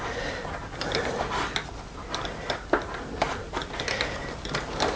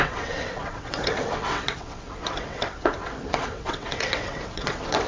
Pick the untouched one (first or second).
first